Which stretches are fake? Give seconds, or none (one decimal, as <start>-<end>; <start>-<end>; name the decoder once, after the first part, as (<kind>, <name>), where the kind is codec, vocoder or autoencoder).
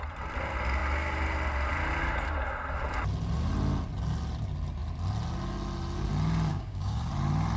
6.5-7.1 (codec, DAC)